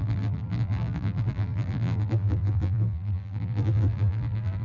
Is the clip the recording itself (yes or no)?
no